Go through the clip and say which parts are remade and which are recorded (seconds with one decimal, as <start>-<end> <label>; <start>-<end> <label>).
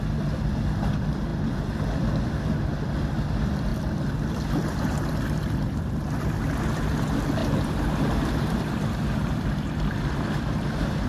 0.0-7.4 remade; 7.4-8.4 recorded; 8.4-11.1 remade